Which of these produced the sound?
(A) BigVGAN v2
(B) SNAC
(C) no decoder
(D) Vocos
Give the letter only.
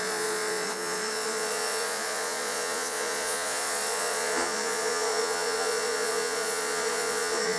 D